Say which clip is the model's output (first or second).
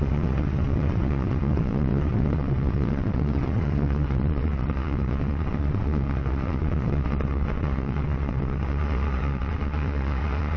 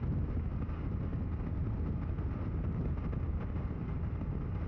first